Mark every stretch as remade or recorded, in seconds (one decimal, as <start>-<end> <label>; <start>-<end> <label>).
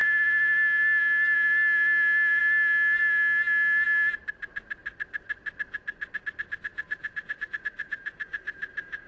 0.0-6.7 recorded; 6.7-8.3 remade; 8.3-9.1 recorded